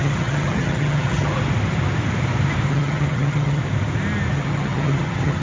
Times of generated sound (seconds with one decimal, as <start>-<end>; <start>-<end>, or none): 0.0-1.3; 2.7-3.6; 4.3-5.4